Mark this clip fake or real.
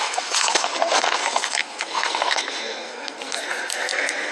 fake